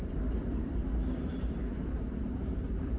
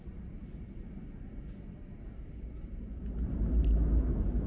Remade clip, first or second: first